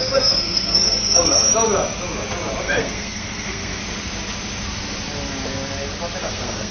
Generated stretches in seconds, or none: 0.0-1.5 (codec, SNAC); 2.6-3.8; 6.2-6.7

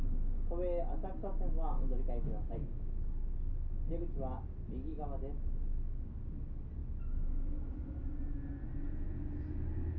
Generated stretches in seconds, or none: none

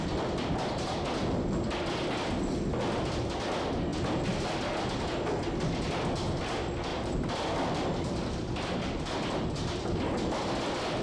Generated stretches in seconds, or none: 6.9-9.8 (vocoder, BigVGAN v2)